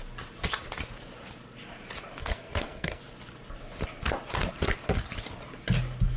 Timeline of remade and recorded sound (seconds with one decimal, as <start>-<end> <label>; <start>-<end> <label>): 0.0-2.2 recorded; 2.2-3.0 remade; 3.0-6.2 recorded